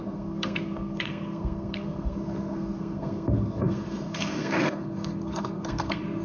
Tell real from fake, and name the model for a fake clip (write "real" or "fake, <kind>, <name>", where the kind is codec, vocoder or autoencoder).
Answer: fake, codec, SNAC